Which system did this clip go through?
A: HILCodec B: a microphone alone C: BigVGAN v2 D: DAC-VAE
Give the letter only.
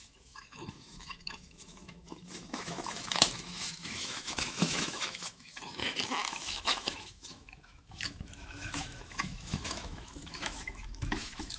D